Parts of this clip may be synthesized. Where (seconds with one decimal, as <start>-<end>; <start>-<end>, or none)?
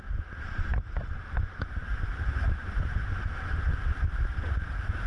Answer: 0.0-1.8; 3.0-5.1